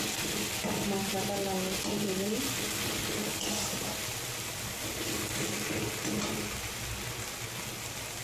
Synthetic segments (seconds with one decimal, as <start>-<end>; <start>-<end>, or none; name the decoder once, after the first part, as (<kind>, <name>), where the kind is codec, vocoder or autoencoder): none